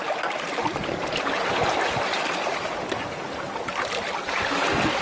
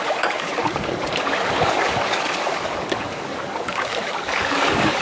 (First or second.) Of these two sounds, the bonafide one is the first